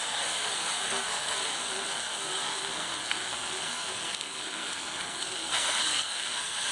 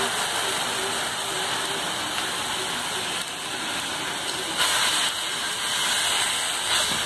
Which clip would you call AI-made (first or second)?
first